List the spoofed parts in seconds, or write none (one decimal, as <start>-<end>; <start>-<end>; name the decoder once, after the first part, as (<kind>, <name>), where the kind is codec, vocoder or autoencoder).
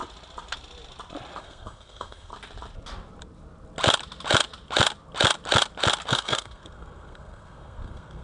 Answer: 1.4-2.3 (codec, SNAC); 6.1-8.2